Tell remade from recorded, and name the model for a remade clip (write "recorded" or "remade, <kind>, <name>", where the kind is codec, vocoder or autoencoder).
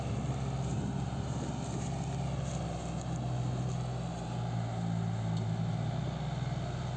recorded